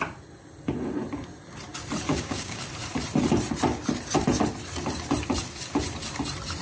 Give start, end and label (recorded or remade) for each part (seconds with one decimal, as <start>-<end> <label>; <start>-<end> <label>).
0.0-2.1 recorded; 2.1-2.6 remade; 2.6-6.6 recorded